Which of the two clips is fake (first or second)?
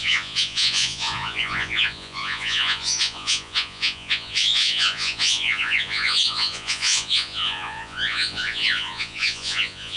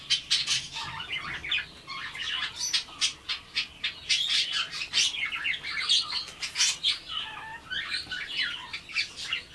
first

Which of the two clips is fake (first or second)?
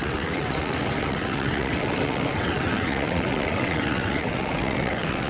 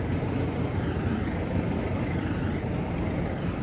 first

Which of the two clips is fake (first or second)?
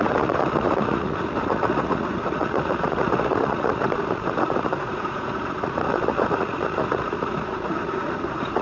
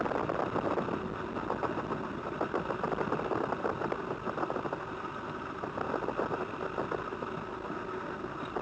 first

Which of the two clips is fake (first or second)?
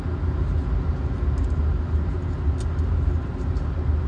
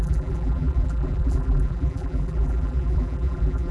second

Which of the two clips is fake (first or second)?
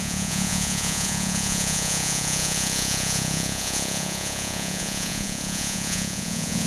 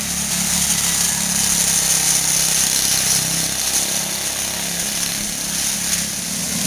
first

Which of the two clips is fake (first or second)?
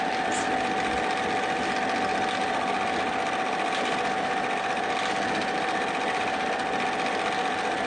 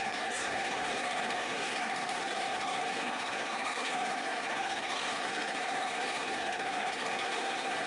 second